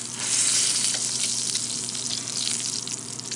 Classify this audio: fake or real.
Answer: real